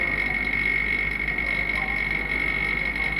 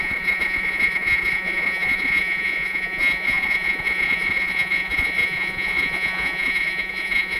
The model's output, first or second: second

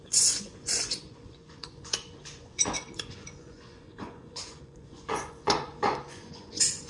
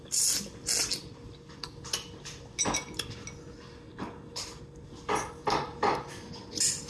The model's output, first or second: first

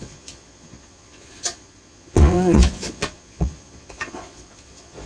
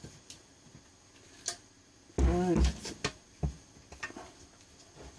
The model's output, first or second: first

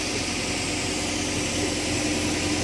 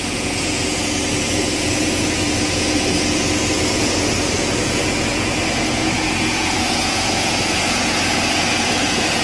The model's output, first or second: second